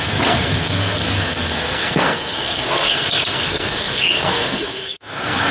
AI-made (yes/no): yes